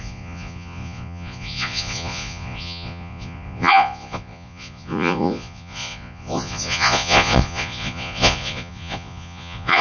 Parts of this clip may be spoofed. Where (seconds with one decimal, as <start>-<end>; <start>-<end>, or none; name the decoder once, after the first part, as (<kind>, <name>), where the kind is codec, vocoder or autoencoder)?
0.0-9.8 (vocoder, Vocos)